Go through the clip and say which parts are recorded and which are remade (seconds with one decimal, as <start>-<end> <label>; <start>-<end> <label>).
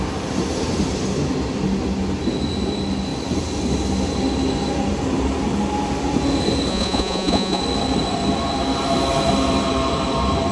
0.0-6.7 recorded; 6.7-7.6 remade; 7.6-10.5 recorded